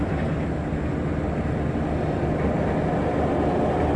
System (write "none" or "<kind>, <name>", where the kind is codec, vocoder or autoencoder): none